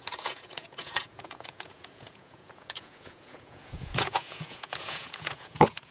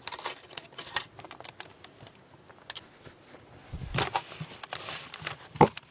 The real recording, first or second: second